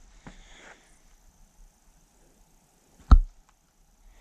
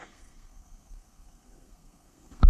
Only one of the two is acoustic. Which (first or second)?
first